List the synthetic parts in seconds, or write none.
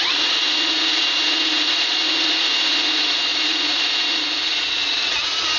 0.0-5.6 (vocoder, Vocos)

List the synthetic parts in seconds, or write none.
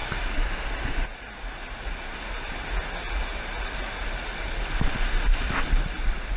none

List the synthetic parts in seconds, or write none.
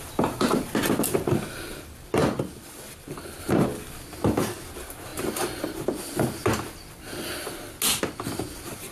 none